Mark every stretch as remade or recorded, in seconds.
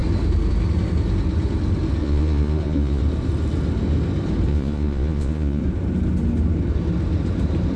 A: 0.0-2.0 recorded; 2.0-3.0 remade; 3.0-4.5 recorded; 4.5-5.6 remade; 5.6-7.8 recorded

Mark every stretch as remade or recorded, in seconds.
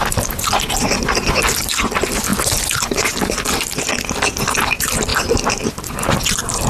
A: 0.0-6.7 recorded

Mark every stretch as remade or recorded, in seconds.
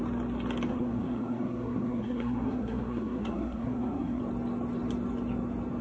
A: 0.0-0.7 recorded; 0.7-4.2 remade; 4.2-5.8 recorded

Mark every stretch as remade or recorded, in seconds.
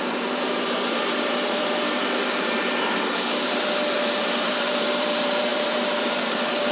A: 0.0-6.7 remade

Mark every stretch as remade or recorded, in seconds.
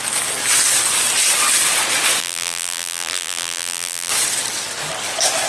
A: 0.0-2.2 recorded; 2.2-4.1 remade; 4.1-5.5 recorded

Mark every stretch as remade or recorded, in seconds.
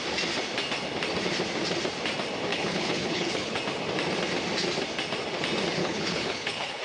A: 0.0-2.5 recorded; 2.5-3.6 remade; 3.6-5.8 recorded; 5.8-6.8 remade